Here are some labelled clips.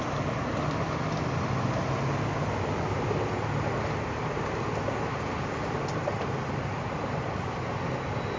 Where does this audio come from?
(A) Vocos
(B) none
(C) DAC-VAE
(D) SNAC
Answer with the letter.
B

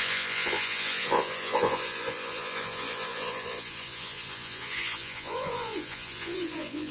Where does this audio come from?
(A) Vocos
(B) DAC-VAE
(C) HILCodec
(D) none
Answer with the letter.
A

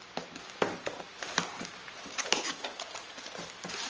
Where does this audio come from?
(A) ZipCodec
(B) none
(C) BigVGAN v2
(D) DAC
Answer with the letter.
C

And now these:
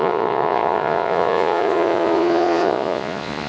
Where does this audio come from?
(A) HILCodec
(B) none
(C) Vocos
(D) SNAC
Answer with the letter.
C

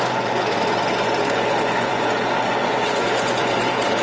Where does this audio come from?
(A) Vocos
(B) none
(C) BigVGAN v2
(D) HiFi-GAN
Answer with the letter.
A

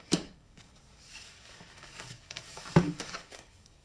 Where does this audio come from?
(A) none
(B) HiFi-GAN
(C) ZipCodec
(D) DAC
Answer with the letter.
D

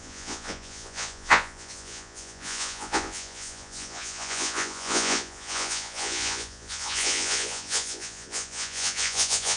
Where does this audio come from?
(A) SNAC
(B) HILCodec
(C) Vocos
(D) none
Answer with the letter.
C